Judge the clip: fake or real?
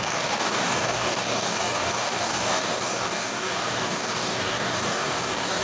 fake